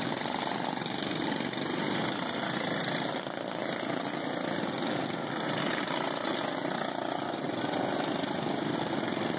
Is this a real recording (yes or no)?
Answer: yes